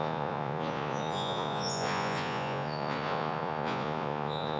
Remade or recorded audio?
remade